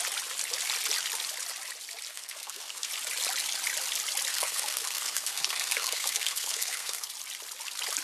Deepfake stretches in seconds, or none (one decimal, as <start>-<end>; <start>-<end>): 2.1-2.9; 4.3-7.1